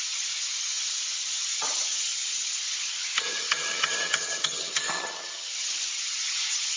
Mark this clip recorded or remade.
remade